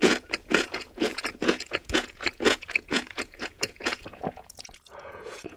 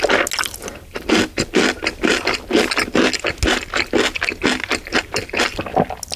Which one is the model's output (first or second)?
first